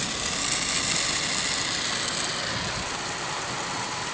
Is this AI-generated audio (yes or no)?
no